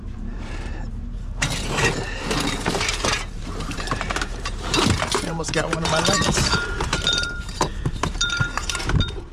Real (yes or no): no